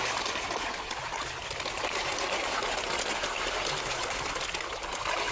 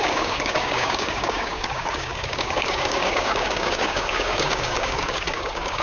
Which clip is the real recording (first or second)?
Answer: first